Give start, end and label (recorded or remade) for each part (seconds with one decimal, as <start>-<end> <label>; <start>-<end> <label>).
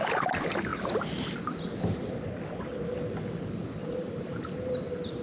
0.0-0.7 remade; 0.7-3.8 recorded; 3.8-5.2 remade